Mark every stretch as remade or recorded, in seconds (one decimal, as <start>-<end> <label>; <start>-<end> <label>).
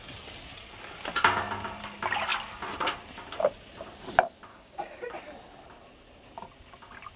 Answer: 0.0-4.5 recorded; 4.5-5.2 remade; 5.2-7.2 recorded